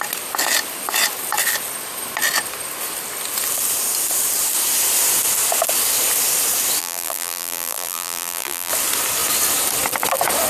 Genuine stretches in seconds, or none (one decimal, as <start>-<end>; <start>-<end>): 0.0-6.8; 8.7-10.5